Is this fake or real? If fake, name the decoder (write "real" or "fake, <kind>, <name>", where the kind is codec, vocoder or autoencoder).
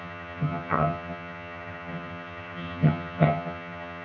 fake, vocoder, HiFi-GAN